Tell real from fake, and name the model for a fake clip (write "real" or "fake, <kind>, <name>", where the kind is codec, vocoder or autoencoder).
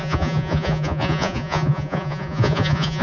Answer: fake, vocoder, Vocos